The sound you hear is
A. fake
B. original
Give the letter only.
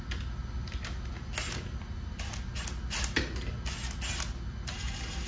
B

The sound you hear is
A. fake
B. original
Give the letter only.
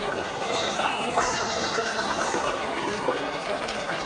A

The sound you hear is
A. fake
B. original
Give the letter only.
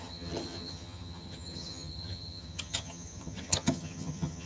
A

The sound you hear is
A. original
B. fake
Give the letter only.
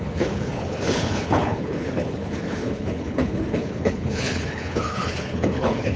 B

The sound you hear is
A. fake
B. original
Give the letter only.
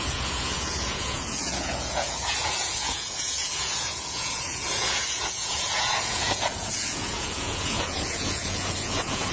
A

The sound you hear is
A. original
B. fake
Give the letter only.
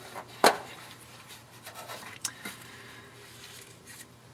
B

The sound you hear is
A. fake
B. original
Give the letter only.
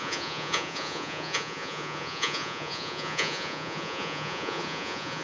A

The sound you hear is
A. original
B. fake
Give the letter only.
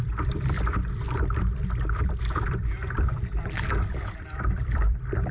B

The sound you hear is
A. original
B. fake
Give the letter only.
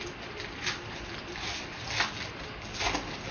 A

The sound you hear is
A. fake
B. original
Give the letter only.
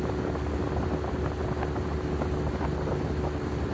B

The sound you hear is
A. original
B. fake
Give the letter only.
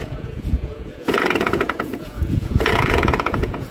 B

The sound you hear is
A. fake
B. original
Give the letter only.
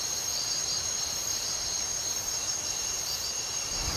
A